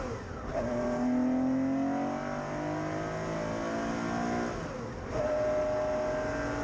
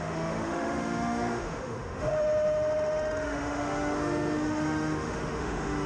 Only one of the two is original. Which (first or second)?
first